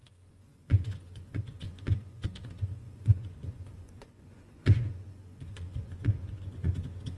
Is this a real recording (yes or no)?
no